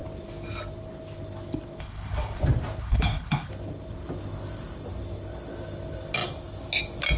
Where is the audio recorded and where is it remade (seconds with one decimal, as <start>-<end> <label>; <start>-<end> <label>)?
0.0-1.8 recorded; 1.8-2.4 remade; 2.4-2.8 recorded; 2.8-3.5 remade; 3.5-7.2 recorded